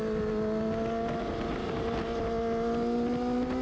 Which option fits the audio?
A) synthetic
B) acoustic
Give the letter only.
B